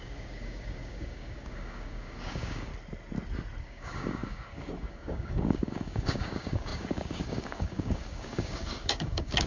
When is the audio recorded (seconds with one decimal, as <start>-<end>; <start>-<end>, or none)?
2.7-3.6